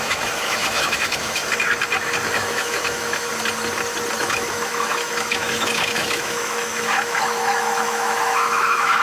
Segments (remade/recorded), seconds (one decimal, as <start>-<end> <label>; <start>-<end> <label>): 0.0-1.4 remade; 1.4-2.3 recorded; 2.3-3.3 remade; 3.3-4.2 recorded; 4.2-9.0 remade